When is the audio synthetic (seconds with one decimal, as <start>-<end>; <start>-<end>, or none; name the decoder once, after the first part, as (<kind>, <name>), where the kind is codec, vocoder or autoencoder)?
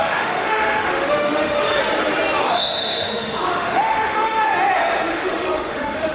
0.0-1.8 (autoencoder, DAC-VAE); 2.4-4.5; 5.1-6.1